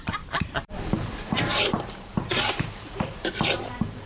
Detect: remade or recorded remade